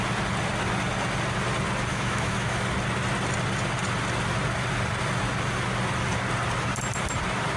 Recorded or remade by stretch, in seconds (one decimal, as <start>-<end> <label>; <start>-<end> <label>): 0.0-1.9 recorded; 1.9-2.6 remade; 2.6-7.6 recorded